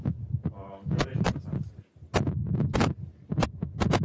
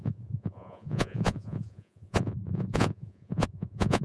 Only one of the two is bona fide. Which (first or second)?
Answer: first